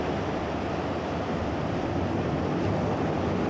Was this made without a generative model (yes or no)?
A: yes